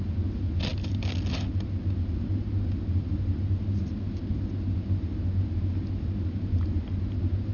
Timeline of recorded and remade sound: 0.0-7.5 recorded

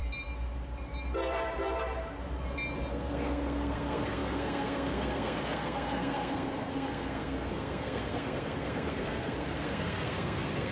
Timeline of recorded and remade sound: 0.0-2.9 recorded; 2.9-10.7 remade

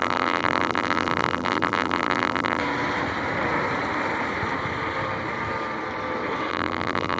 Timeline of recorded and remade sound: 0.0-2.6 remade; 2.6-6.5 recorded; 6.5-7.2 remade

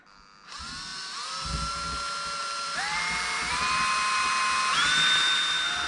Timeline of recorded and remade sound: 0.0-0.9 recorded; 0.9-1.7 remade; 1.7-2.4 recorded; 2.4-3.6 remade; 3.6-5.9 recorded

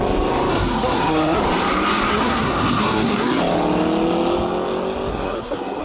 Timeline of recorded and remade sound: 0.0-0.5 recorded; 0.5-1.4 remade; 1.4-2.1 recorded; 2.1-3.4 remade; 3.4-5.1 recorded; 5.1-5.8 remade

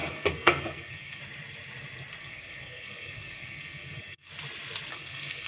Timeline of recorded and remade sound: 0.0-1.2 remade; 1.2-2.2 recorded; 2.2-4.3 remade; 4.3-4.9 recorded; 4.9-5.5 remade

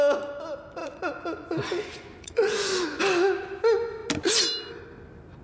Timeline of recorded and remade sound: 0.0-0.8 recorded; 0.8-3.0 remade; 3.0-5.4 recorded